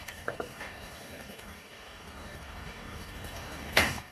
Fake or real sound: fake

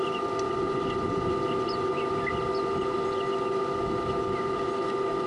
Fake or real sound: real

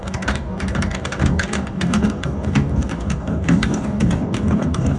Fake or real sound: fake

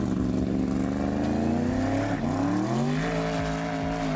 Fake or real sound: real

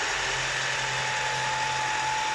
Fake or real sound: real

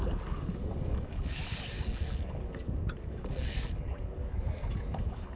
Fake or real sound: fake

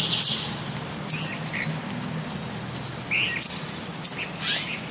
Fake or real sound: real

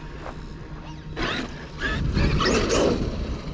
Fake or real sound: real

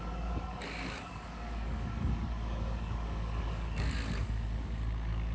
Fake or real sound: fake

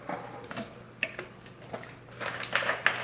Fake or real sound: real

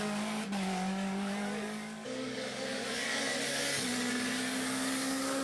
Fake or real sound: fake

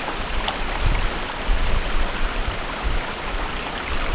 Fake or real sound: real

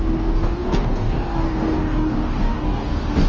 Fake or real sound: fake